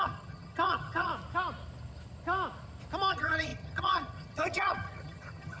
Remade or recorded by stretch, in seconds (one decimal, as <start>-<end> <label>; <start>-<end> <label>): 0.0-1.1 remade; 1.1-3.1 recorded; 3.1-5.6 remade